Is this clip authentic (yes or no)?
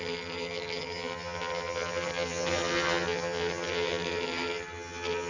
no